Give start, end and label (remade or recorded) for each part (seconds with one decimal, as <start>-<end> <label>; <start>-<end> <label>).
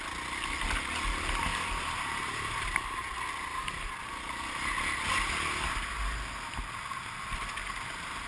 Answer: 0.0-8.3 recorded